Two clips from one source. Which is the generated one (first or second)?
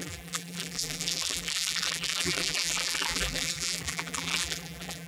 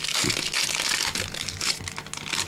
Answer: first